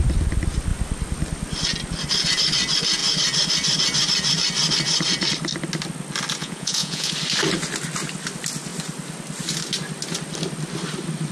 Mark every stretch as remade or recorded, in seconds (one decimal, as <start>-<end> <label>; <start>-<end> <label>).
0.0-6.4 recorded; 6.4-7.1 remade; 7.1-11.3 recorded